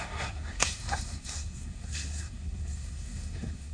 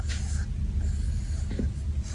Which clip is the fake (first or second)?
first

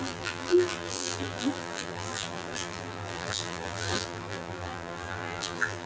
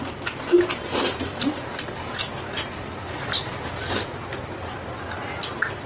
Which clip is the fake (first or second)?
first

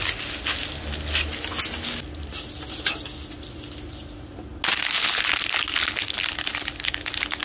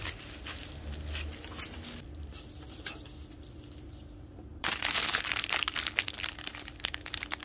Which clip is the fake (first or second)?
second